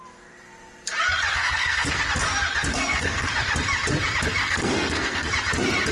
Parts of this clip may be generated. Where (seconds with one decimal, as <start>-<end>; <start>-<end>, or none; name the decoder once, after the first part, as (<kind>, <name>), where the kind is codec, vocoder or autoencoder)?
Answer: 1.3-2.0 (codec, SNAC); 2.7-3.3; 4.4-5.3